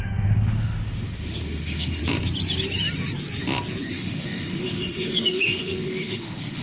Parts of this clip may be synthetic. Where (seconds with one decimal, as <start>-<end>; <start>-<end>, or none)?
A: 0.0-2.0; 3.9-6.6